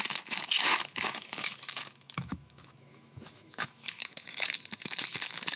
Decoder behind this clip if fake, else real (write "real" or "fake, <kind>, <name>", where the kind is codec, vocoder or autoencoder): fake, autoencoder, DAC-VAE